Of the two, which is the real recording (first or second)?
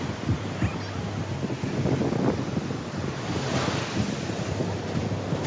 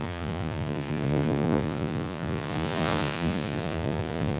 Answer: first